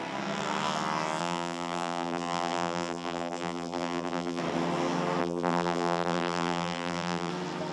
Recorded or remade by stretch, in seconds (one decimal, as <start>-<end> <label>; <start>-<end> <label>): 0.0-1.2 recorded; 1.2-4.4 remade; 4.4-5.2 recorded; 5.2-7.3 remade; 7.3-7.7 recorded